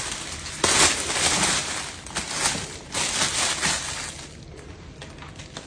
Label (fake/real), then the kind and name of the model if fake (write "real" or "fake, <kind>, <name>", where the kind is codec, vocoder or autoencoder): real